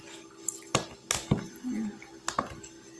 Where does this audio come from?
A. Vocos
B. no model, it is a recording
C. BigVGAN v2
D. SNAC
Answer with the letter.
B